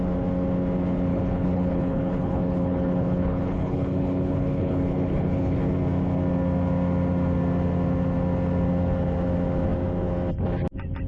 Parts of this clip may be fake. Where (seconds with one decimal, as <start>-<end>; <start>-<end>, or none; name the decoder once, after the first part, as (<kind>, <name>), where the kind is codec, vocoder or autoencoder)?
1.1-5.7 (codec, HILCodec)

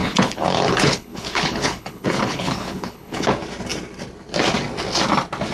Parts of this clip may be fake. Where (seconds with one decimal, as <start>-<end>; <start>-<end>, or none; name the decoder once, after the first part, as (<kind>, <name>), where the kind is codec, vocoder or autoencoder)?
0.0-3.3 (codec, HILCodec)

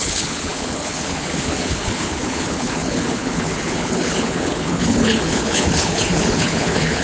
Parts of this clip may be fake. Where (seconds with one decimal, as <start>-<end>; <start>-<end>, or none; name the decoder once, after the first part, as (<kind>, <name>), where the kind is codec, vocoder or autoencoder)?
0.0-7.0 (codec, HILCodec)

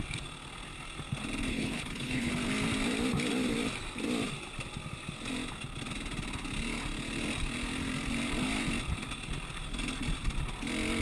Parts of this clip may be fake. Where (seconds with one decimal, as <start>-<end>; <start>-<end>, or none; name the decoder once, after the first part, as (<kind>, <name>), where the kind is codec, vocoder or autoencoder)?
1.5-2.3 (codec, HILCodec)

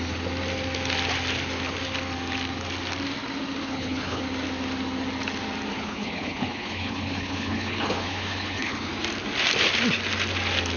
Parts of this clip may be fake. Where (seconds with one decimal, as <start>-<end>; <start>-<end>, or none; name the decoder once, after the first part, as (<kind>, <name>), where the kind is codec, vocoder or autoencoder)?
3.6-4.2 (codec, HILCodec); 5.7-8.9

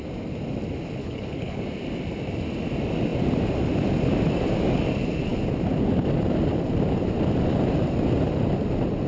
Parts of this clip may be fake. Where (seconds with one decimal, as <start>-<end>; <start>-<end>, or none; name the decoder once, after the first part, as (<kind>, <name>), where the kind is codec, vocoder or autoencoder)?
1.0-1.6 (codec, HILCodec)